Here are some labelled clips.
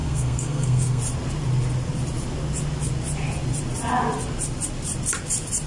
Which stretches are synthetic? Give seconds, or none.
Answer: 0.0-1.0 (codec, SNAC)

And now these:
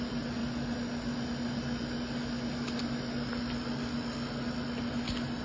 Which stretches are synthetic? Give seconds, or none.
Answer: none

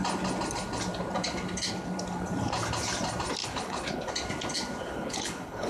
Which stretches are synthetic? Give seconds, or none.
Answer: 3.4-4.1 (codec, HILCodec); 4.8-5.7

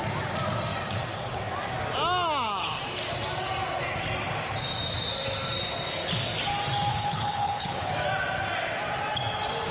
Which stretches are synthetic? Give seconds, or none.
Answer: 6.9-7.9 (codec, HILCodec)

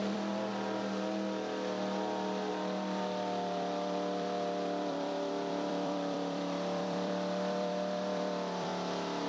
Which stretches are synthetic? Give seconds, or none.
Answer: 0.0-0.5 (vocoder, BigVGAN v2); 2.5-8.7

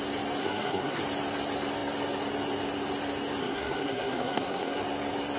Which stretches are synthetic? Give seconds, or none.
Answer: 0.4-1.0 (codec, SNAC); 3.4-4.8

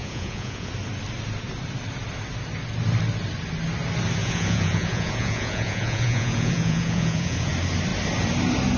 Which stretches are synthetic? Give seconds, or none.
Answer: 0.0-0.7 (vocoder, Vocos); 4.2-7.5